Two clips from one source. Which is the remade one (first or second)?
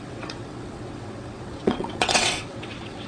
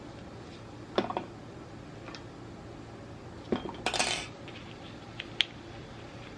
first